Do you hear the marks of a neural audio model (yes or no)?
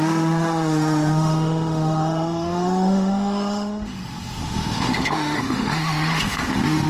yes